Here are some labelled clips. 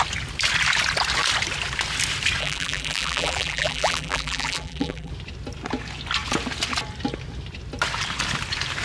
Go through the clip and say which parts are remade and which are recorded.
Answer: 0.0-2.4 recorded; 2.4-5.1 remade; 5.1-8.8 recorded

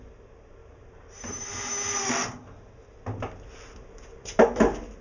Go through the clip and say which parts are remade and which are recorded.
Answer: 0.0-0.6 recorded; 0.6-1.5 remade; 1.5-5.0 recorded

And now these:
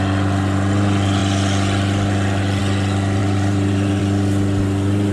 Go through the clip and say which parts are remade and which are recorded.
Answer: 0.0-3.2 recorded; 3.2-4.0 remade; 4.0-5.1 recorded

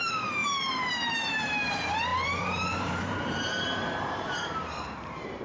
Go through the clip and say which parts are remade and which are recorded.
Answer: 0.0-5.4 remade